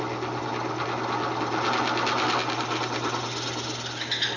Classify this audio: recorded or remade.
recorded